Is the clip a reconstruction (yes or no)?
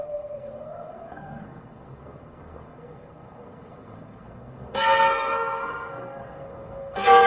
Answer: yes